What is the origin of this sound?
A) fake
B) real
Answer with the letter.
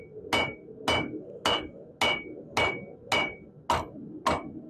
B